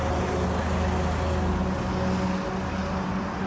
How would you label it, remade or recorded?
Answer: recorded